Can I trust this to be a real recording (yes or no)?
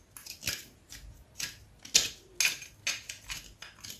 yes